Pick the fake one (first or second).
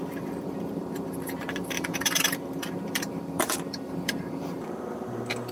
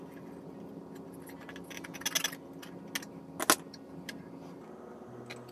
first